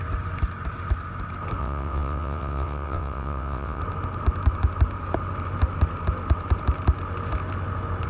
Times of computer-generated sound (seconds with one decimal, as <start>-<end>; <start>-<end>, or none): 1.6-3.8